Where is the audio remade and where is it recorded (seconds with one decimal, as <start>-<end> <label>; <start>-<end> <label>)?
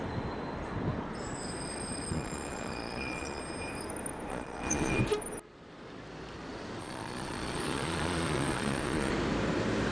0.0-2.1 recorded; 2.1-3.4 remade; 3.4-4.3 recorded; 4.3-5.0 remade; 5.0-6.8 recorded; 6.8-9.1 remade; 9.1-9.9 recorded